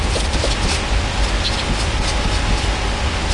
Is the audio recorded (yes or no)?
yes